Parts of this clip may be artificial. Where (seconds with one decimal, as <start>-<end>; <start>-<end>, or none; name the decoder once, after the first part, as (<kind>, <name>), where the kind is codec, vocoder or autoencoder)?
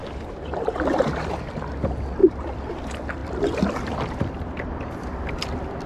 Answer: 0.0-0.7 (vocoder, BigVGAN v2); 2.2-2.8